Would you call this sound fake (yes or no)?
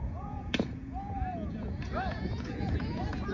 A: yes